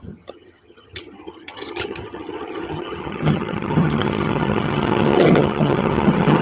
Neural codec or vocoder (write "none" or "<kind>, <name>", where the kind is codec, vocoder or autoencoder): vocoder, HiFi-GAN